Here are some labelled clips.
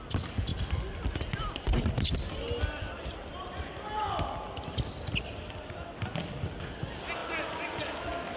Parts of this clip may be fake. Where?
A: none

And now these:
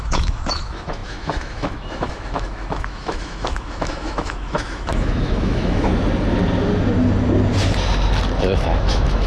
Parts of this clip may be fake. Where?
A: 0.0-5.9 (autoencoder, DAC-VAE); 8.4-9.3

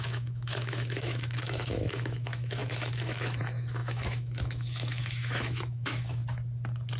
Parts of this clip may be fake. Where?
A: 0.0-6.2 (autoencoder, DAC-VAE)

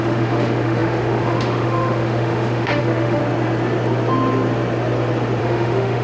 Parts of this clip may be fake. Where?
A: 0.0-3.2 (autoencoder, DAC-VAE); 5.4-6.0

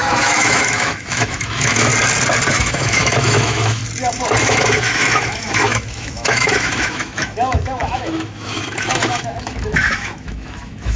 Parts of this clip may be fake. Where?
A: 0.0-1.9 (autoencoder, DAC-VAE); 2.5-3.8; 4.4-11.0

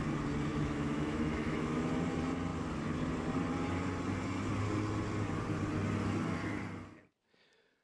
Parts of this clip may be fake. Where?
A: 0.5-1.9 (autoencoder, DAC-VAE)